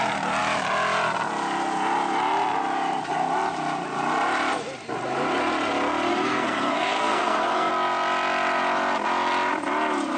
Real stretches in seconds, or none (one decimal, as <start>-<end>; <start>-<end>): 0.0-6.1; 7.7-10.2